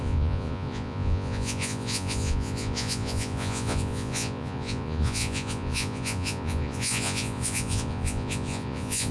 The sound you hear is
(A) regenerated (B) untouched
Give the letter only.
A